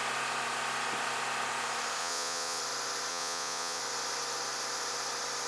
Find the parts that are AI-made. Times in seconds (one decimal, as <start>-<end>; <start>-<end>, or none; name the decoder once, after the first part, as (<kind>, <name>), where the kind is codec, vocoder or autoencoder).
2.0-2.6 (vocoder, Vocos); 3.1-3.8